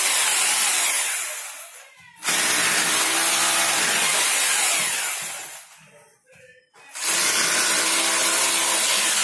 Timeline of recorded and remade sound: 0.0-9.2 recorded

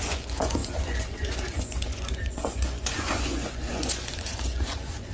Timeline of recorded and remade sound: 0.0-5.1 remade

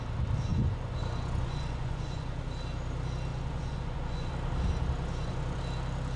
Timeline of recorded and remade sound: 0.0-0.5 recorded; 0.5-2.4 remade; 2.4-3.3 recorded; 3.3-4.3 remade; 4.3-5.0 recorded; 5.0-5.6 remade; 5.6-6.2 recorded

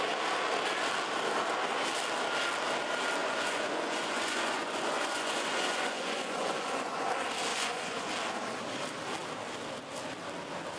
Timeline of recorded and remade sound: 0.0-3.2 recorded; 3.2-7.1 remade; 7.1-7.5 recorded; 7.5-8.1 remade; 8.1-10.8 recorded

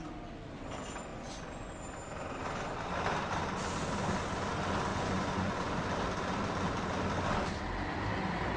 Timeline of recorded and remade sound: 0.0-1.1 recorded; 1.1-1.7 remade; 1.7-4.9 recorded; 4.9-5.8 remade; 5.8-8.6 recorded